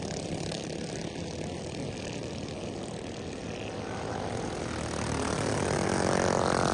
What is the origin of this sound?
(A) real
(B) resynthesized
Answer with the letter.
A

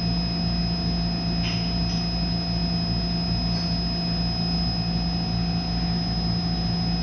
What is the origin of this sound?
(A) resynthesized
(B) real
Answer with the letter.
B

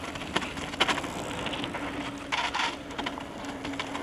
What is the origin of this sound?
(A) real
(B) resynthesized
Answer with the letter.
A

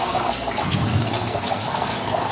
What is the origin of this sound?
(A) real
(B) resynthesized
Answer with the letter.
B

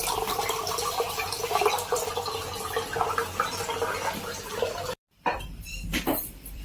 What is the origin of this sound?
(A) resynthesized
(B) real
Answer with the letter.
A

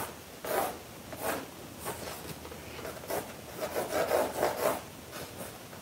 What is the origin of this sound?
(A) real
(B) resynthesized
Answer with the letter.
A